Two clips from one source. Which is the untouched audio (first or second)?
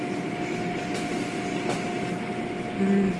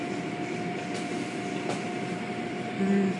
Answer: first